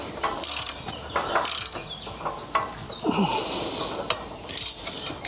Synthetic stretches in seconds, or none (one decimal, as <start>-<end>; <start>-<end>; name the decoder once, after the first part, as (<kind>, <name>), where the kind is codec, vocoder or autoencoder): none